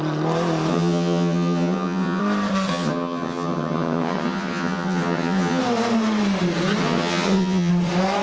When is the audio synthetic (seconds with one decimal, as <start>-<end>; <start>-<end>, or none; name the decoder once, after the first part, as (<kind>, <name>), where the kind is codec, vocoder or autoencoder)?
0.7-2.2 (vocoder, HiFi-GAN); 2.7-5.6; 6.8-7.7